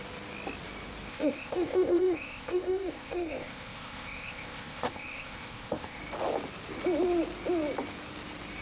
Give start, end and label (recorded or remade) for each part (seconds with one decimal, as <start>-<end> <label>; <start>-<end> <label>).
0.0-1.1 recorded; 1.1-6.0 remade; 6.0-8.6 recorded